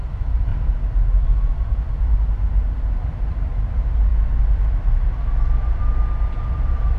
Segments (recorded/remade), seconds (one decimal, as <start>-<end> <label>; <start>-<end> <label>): 0.0-0.5 remade; 0.5-1.2 recorded; 1.2-4.1 remade; 4.1-6.4 recorded; 6.4-7.0 remade